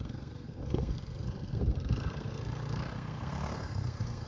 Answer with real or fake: fake